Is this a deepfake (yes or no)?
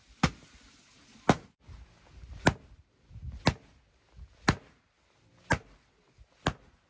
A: no